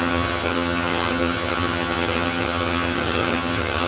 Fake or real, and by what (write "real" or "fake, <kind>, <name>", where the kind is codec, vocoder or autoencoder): fake, vocoder, HiFi-GAN